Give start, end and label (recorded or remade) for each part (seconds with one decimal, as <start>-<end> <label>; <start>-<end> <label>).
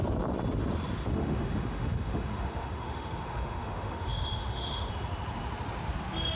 0.0-1.1 recorded; 1.1-4.9 remade; 4.9-6.3 recorded